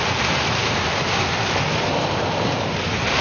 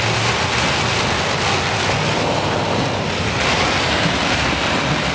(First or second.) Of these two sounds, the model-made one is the first